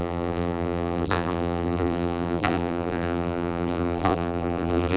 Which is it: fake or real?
fake